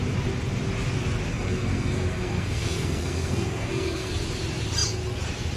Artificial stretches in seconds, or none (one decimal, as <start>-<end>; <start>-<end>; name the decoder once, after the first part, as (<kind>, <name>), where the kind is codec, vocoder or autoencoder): 1.3-4.1 (codec, SNAC)